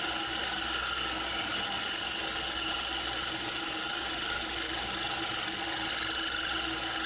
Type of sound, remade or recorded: recorded